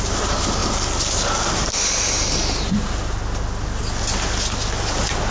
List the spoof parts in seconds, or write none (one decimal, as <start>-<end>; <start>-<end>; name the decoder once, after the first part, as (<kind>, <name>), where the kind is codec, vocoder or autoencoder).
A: none